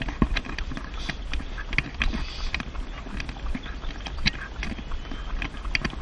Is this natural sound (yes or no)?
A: yes